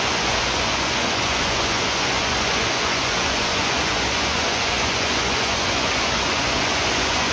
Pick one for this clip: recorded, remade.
remade